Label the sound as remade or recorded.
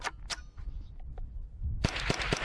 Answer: recorded